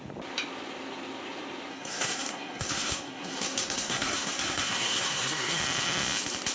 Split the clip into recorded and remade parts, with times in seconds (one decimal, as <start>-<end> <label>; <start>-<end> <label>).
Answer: 0.0-1.7 recorded; 1.7-5.6 remade; 5.6-6.5 recorded